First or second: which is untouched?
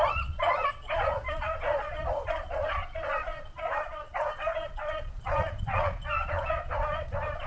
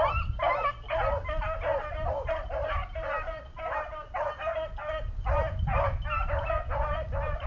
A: second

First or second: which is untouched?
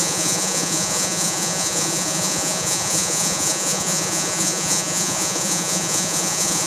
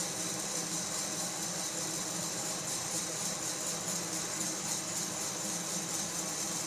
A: second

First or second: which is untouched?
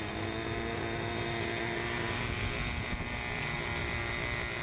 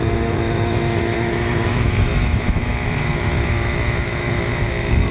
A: first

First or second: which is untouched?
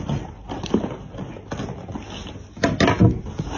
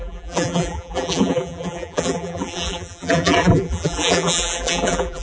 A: first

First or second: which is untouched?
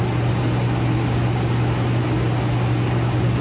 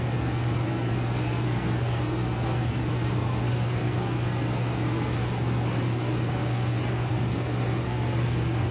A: first